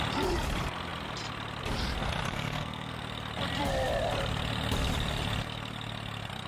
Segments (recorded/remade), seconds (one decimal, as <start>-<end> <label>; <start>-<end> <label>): 0.0-2.3 recorded; 2.3-3.0 remade; 3.0-6.5 recorded